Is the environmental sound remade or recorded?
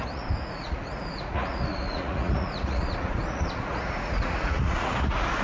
remade